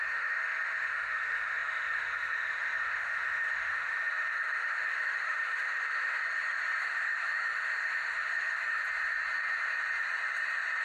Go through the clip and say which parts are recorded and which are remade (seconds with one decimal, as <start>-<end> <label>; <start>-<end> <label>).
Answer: 0.0-6.2 remade; 6.2-6.8 recorded; 6.8-8.8 remade; 8.8-10.8 recorded